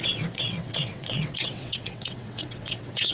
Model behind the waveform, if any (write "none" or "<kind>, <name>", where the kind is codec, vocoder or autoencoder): vocoder, WaveNeXt